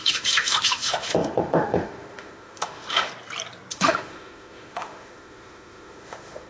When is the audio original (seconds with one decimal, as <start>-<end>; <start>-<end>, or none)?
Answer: 3.1-3.7